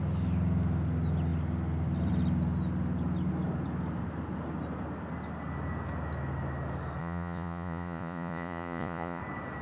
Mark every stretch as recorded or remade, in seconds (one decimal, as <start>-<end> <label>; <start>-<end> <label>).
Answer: 0.0-7.0 recorded; 7.0-9.2 remade; 9.2-9.6 recorded